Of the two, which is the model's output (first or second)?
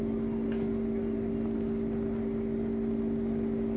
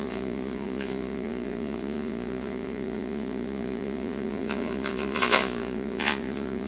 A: second